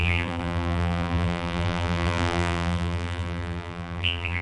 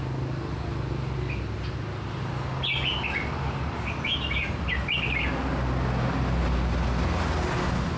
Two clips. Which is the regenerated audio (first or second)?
first